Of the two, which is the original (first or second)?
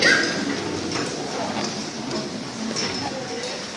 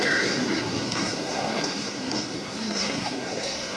first